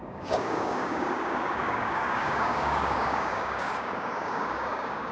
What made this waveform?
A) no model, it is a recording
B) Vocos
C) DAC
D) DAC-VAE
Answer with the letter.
C